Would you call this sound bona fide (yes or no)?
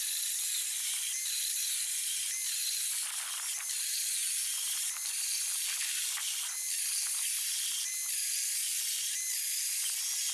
yes